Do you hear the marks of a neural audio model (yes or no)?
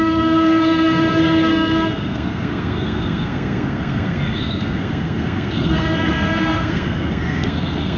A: yes